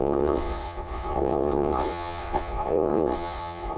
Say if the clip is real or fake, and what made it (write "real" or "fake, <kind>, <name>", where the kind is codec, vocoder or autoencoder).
fake, vocoder, Vocos